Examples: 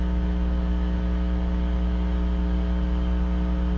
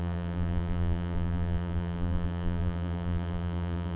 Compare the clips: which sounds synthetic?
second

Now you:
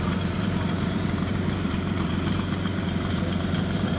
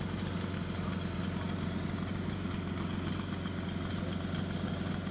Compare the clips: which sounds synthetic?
first